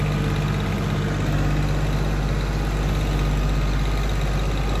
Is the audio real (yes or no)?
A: yes